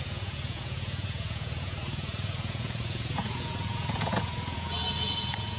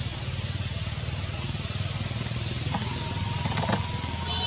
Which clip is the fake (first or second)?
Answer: first